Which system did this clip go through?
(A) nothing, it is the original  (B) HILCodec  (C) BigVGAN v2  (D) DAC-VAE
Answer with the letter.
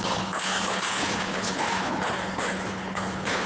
B